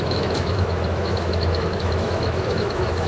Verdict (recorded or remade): remade